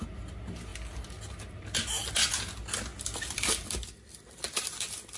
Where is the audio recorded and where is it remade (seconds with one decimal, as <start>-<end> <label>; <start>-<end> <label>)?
0.0-5.2 recorded